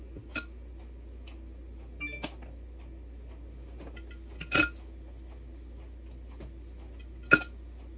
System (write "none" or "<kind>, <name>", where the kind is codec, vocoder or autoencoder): none